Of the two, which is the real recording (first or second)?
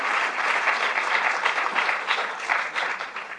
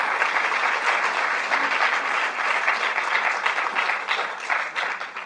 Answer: second